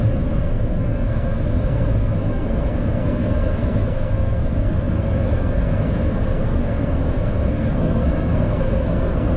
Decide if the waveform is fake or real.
fake